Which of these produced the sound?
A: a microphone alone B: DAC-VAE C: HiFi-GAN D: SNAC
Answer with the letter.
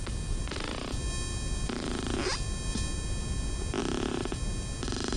A